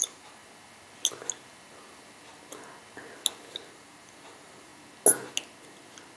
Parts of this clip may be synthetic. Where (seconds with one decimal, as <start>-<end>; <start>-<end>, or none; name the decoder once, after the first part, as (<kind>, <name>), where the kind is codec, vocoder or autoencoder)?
0.0-0.4 (vocoder, BigVGAN v2); 3.7-4.7